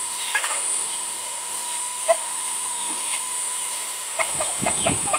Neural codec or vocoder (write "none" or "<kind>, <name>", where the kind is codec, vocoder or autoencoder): autoencoder, DAC-VAE